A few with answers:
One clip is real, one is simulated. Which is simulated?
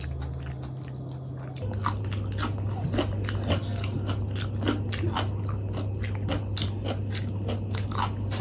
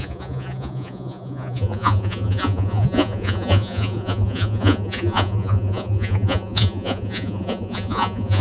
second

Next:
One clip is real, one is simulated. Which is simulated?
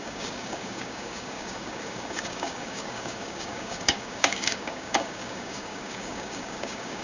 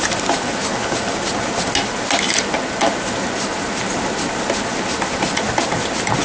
first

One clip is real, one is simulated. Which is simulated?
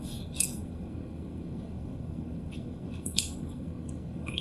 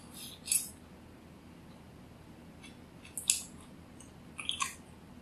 first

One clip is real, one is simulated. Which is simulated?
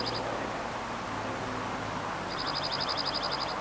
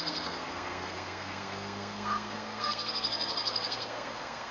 second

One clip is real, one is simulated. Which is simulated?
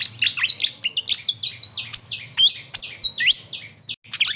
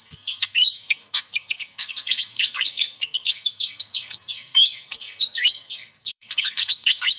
second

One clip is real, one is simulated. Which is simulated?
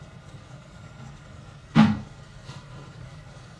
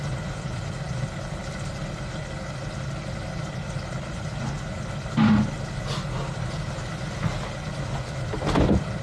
first